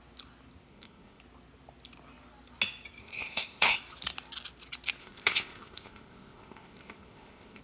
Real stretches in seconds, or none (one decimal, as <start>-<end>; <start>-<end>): 0.0-0.7; 1.2-3.0; 3.8-5.0